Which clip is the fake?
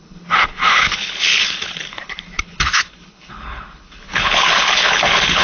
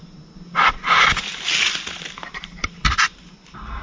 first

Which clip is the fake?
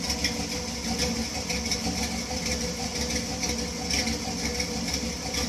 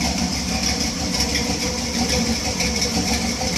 second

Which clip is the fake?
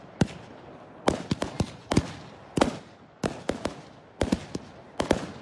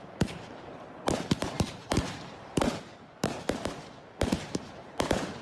second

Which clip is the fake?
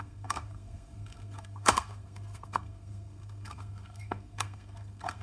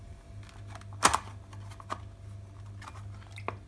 first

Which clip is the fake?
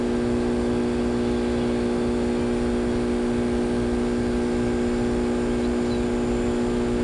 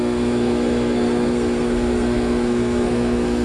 second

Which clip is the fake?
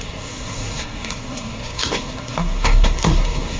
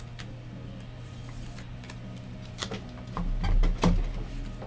first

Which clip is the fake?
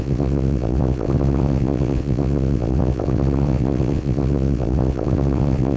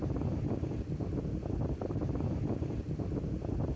first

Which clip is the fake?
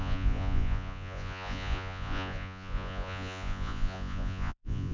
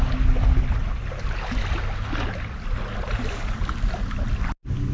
first